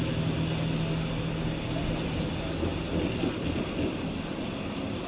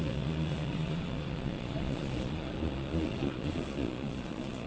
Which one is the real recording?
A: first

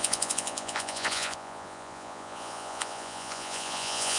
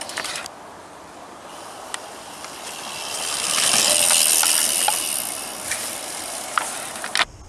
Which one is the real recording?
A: second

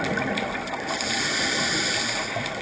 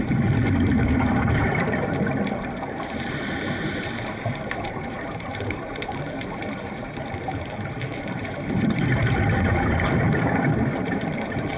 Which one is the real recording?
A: first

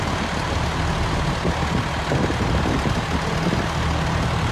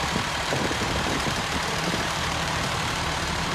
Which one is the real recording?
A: first